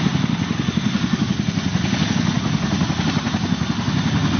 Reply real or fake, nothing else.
real